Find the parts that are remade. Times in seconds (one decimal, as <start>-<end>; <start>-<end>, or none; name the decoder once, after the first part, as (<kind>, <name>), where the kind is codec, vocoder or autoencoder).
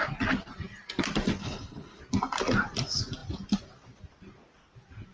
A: 1.4-2.0 (codec, HILCodec)